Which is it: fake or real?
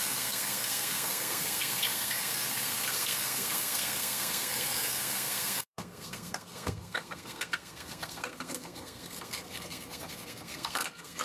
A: fake